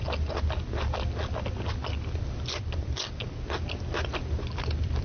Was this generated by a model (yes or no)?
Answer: no